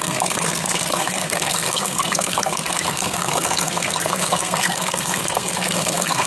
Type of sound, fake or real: fake